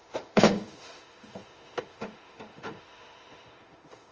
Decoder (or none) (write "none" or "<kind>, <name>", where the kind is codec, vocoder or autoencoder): autoencoder, DAC-VAE